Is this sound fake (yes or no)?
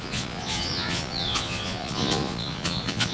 yes